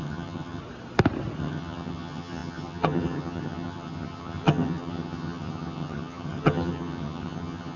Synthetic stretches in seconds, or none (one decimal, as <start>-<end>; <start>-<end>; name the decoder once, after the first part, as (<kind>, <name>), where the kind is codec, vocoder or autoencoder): 0.0-0.6 (vocoder, HiFi-GAN); 1.4-7.8

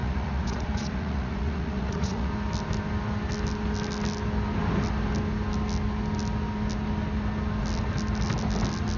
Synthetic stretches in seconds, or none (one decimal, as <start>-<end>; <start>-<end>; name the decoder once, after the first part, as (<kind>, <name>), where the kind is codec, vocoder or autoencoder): 0.0-2.3 (vocoder, Vocos)

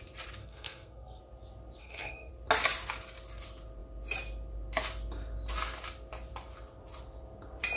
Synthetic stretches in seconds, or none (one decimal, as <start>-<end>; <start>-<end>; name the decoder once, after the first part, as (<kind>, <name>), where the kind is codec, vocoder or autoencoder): 0.4-1.2 (codec, SNAC); 1.8-2.3